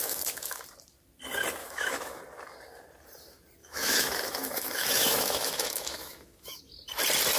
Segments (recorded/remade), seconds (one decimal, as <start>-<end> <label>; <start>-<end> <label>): 0.0-0.6 remade; 0.6-1.6 recorded; 1.6-2.2 remade; 2.2-3.6 recorded; 3.6-6.6 remade; 6.6-7.4 recorded